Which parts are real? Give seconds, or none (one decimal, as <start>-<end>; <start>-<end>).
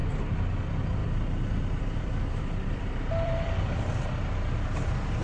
0.0-1.0; 4.1-5.2